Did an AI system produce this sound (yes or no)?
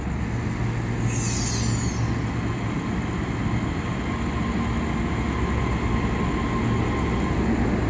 no